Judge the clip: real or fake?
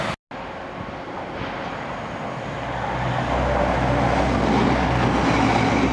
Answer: real